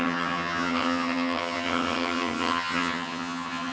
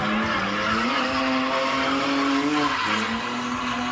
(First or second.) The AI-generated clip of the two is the first